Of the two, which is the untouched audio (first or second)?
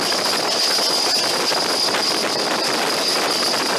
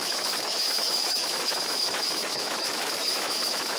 first